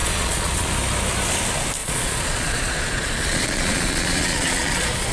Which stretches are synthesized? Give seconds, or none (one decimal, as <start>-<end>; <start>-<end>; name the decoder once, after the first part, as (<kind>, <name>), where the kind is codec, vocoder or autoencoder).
0.0-0.7 (vocoder, Vocos); 1.8-5.1